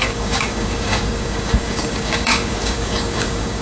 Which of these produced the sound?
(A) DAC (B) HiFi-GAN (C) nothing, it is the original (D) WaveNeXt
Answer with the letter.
A